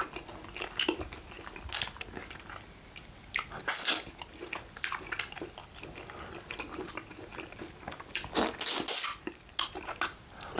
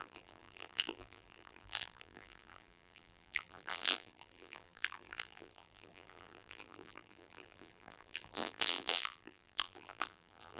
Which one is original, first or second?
first